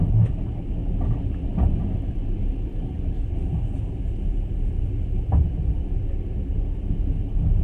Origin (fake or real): real